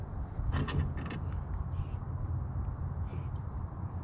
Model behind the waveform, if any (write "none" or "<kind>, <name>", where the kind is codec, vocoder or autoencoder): none